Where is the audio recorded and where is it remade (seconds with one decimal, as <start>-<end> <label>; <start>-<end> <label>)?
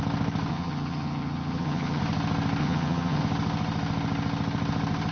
0.0-0.5 recorded; 0.5-2.0 remade; 2.0-2.6 recorded; 2.6-3.2 remade; 3.2-5.1 recorded